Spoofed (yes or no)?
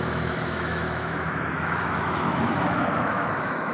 yes